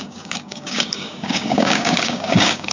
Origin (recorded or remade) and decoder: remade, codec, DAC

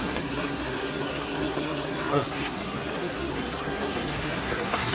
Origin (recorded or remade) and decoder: remade, codec, SNAC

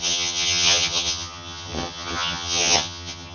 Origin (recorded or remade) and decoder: remade, vocoder, HiFi-GAN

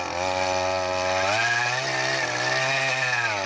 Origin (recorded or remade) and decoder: recorded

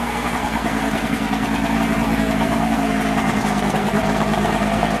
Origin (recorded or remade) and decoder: remade, codec, SNAC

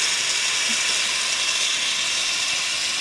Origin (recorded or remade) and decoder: recorded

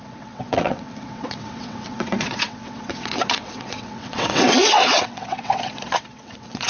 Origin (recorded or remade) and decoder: remade, vocoder, WaveNeXt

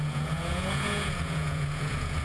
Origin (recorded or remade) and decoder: remade, vocoder, Vocos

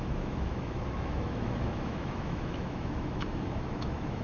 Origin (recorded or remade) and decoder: remade, autoencoder, DAC-VAE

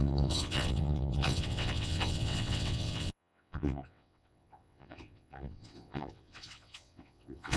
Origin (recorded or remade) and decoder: remade, vocoder, WaveNeXt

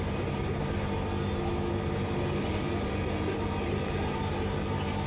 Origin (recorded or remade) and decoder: recorded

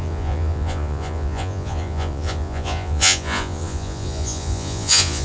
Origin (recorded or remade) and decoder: remade, vocoder, Vocos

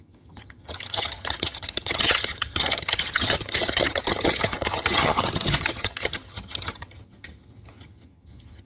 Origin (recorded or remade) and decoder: remade, vocoder, HiFi-GAN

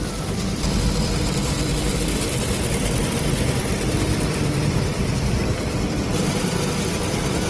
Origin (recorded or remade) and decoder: remade, vocoder, BigVGAN v2